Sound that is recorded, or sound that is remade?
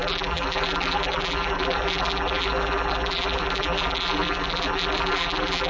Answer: remade